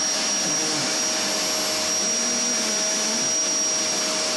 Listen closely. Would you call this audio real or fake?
real